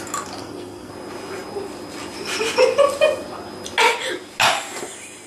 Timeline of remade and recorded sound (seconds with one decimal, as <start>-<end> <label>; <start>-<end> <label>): 0.0-0.4 recorded; 0.4-0.9 remade; 0.9-5.3 recorded